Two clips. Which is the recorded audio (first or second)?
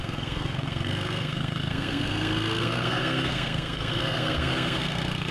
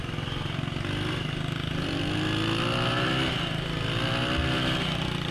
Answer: second